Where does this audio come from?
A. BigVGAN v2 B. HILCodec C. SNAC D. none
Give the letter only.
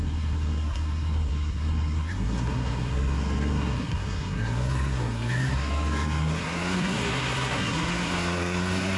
C